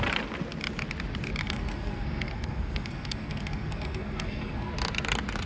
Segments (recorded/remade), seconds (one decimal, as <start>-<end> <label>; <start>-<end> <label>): 0.0-1.4 recorded; 1.4-4.7 remade; 4.7-5.5 recorded